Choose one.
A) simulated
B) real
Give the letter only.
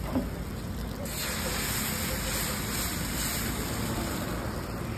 B